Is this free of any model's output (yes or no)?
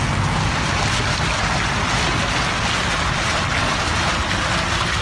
yes